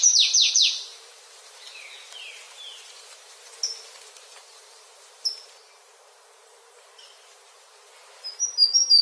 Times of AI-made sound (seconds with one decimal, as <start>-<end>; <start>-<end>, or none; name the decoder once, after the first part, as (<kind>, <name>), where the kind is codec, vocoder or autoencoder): 0.0-3.5 (vocoder, BigVGAN v2); 4.1-7.9